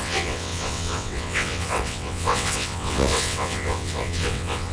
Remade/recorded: remade